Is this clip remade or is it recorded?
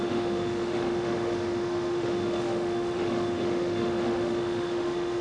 remade